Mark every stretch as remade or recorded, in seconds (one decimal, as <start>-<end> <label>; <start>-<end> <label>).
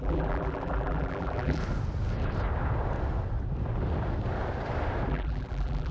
0.0-1.6 remade; 1.6-5.1 recorded; 5.1-5.9 remade